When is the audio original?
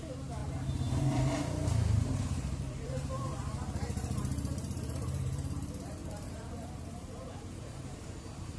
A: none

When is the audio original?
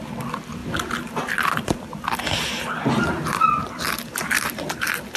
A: 0.0-0.6; 1.8-3.6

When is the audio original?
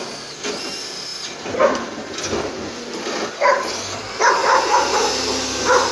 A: 0.0-5.9